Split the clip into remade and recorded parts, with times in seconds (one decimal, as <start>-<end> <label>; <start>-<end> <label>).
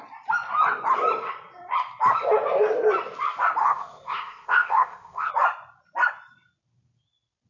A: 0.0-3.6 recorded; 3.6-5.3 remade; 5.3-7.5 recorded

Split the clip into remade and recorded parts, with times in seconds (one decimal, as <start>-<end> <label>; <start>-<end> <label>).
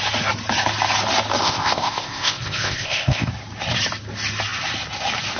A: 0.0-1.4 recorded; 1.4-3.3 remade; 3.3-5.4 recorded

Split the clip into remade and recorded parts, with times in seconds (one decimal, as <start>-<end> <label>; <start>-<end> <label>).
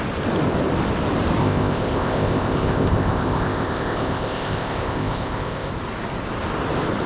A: 0.0-1.4 recorded; 1.4-5.7 remade; 5.7-7.1 recorded